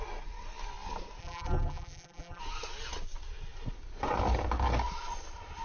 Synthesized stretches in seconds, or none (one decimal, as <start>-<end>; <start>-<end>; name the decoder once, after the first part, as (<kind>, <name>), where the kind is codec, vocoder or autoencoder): 1.2-2.4 (vocoder, BigVGAN v2)